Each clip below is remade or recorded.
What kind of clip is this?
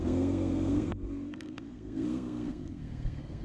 remade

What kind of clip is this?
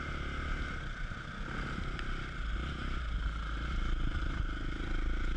recorded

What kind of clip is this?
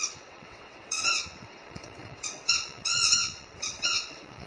remade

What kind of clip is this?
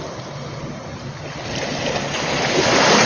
recorded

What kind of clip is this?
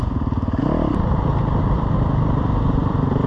remade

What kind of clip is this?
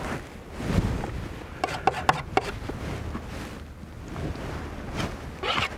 recorded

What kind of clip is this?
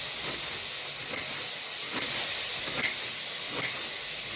recorded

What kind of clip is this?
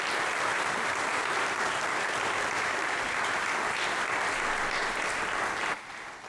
remade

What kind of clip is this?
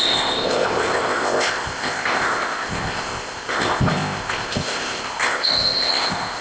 remade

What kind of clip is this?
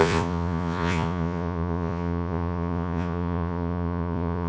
remade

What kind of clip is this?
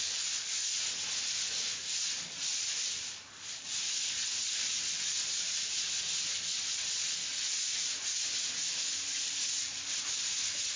recorded